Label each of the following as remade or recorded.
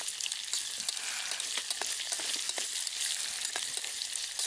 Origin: recorded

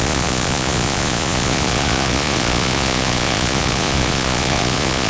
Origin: remade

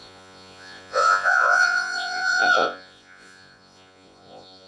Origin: remade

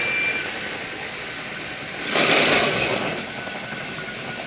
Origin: recorded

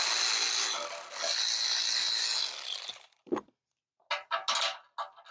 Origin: recorded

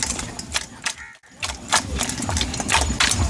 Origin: recorded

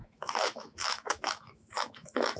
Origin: remade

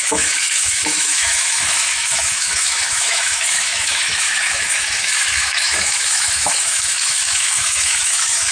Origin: remade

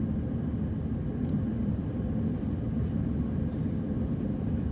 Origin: recorded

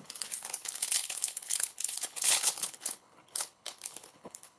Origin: remade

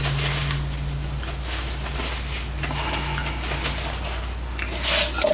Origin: recorded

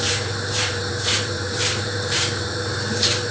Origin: remade